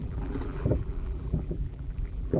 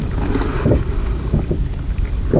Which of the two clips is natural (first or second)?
second